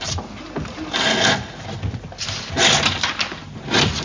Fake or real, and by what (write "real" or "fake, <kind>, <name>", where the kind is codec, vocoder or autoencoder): real